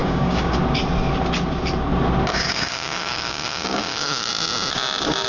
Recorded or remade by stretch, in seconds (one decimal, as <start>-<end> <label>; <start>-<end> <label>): 0.0-0.6 remade; 0.6-2.3 recorded; 2.3-4.3 remade; 4.3-5.3 recorded